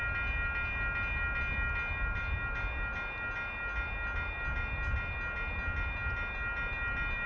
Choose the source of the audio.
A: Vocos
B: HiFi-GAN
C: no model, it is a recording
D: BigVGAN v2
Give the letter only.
C